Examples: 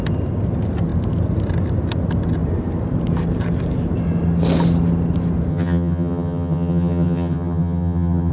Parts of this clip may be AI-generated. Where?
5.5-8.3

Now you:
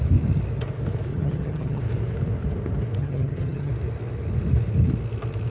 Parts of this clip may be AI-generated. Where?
1.1-1.8; 3.0-3.7

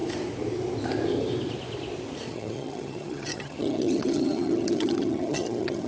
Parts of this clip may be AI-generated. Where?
2.3-5.9

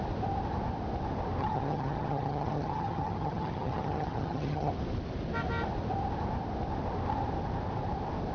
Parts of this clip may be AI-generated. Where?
1.4-4.7

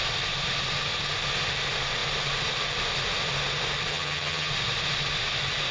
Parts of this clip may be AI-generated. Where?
3.9-4.5

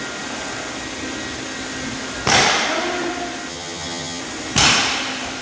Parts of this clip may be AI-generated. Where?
3.5-4.2

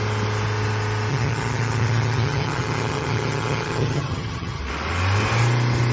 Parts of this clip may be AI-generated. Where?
1.1-4.6

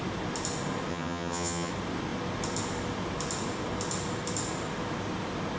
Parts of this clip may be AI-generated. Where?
0.9-1.7